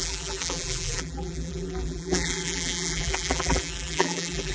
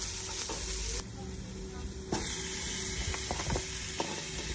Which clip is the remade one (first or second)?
first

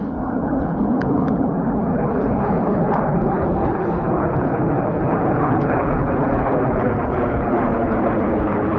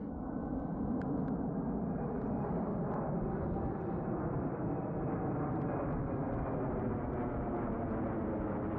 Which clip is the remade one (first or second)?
first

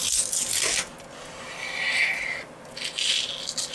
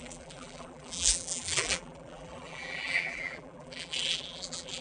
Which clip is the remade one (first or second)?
second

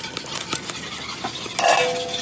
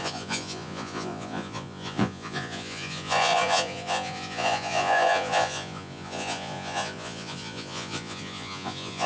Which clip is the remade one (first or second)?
second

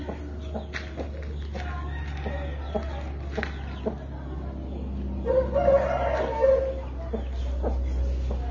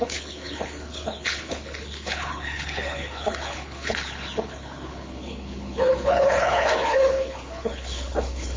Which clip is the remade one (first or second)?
second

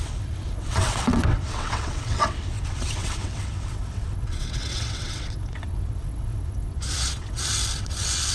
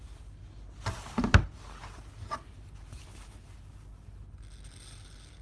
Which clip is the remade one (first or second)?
first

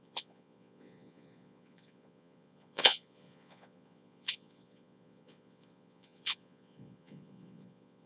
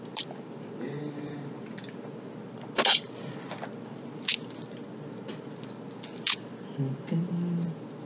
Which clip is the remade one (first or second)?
first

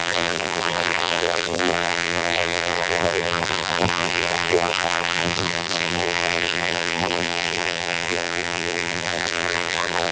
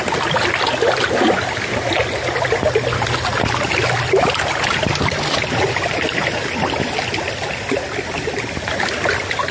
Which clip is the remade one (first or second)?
first